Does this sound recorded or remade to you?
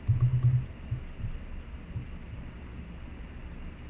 recorded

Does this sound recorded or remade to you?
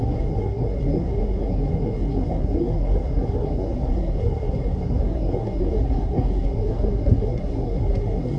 remade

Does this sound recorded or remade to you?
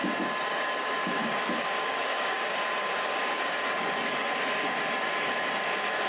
remade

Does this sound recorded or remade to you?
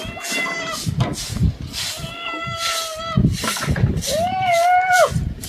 recorded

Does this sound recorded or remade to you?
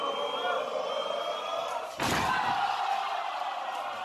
recorded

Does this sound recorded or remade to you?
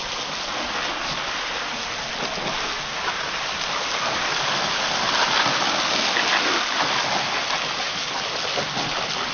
recorded